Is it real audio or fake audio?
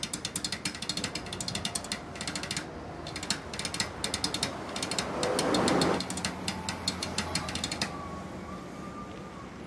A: real